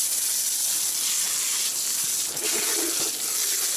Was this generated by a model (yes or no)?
no